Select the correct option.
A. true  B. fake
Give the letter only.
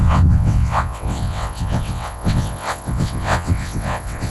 B